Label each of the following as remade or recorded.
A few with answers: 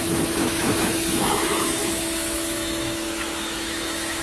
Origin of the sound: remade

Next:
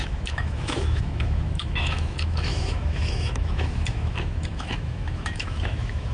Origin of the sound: remade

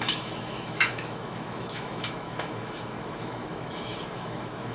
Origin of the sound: remade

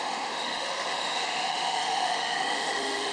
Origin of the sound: remade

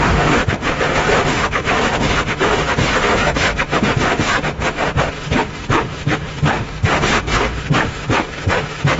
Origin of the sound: remade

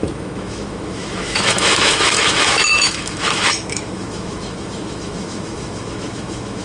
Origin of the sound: remade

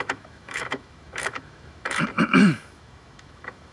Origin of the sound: remade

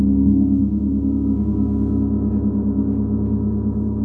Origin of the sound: remade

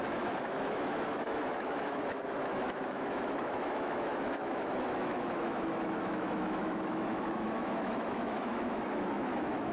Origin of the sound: remade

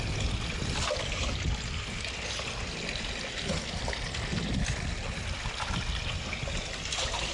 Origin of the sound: recorded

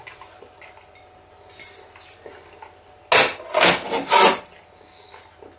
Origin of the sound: recorded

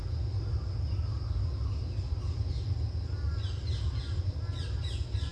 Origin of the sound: recorded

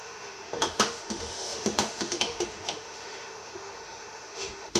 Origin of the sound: remade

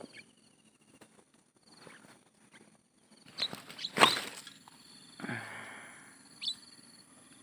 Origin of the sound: recorded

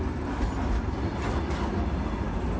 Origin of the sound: recorded